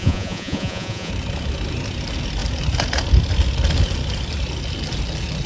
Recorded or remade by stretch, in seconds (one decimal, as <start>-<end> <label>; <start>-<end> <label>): 0.0-1.1 remade; 1.1-5.5 recorded